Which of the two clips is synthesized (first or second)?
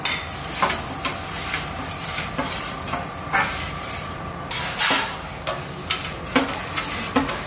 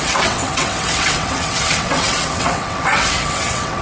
second